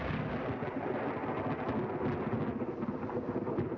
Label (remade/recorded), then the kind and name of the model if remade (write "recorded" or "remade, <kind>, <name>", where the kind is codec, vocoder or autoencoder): recorded